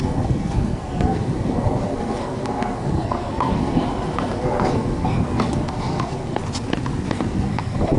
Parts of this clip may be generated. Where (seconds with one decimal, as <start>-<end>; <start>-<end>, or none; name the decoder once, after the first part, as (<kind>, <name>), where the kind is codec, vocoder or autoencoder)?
0.0-6.4 (codec, SNAC); 7.1-8.0